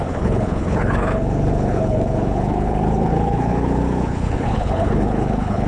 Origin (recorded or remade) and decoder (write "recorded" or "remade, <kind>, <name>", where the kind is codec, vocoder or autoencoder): remade, codec, HILCodec